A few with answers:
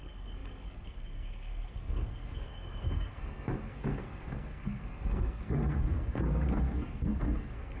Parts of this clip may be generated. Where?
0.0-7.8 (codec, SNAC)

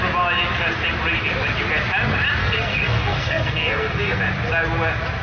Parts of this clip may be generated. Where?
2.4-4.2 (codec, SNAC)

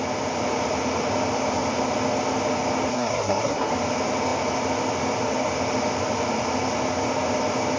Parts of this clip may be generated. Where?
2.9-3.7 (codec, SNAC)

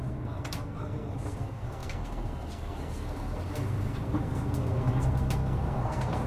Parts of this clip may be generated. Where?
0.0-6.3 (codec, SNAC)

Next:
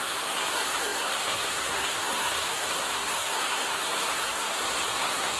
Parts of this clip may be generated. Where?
0.0-5.4 (codec, SNAC)

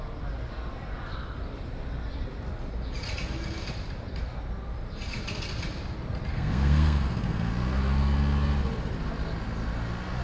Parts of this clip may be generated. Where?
6.3-7.5 (codec, SNAC)